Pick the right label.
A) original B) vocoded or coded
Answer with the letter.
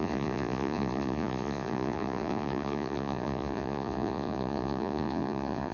B